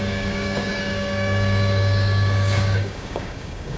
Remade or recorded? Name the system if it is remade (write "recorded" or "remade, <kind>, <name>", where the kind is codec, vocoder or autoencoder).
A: remade, codec, DAC